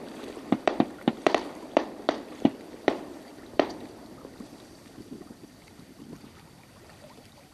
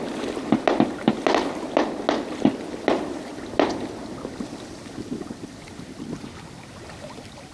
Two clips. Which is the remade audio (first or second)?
first